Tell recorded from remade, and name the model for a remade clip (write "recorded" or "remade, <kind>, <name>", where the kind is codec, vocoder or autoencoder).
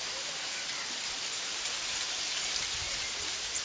remade, vocoder, BigVGAN v2